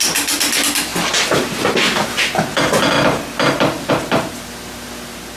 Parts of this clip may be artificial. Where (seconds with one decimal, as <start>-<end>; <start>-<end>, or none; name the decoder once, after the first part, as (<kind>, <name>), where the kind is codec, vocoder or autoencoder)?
none